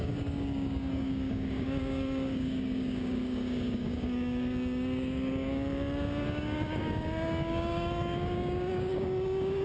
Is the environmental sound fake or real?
fake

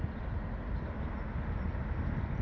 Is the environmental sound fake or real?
real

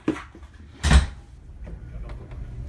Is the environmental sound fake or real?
real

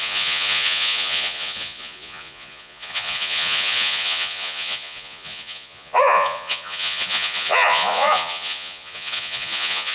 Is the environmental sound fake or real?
fake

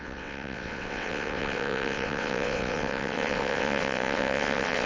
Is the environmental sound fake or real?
fake